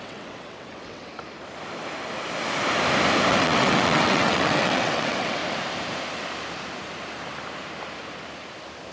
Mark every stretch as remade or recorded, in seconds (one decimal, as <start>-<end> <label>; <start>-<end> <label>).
0.0-1.1 remade; 1.1-3.3 recorded; 3.3-5.4 remade; 5.4-8.9 recorded